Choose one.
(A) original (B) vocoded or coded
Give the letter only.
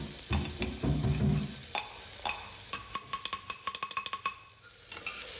A